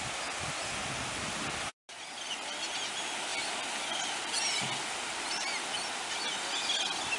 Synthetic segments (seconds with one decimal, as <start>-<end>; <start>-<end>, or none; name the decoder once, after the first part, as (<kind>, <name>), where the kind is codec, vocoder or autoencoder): none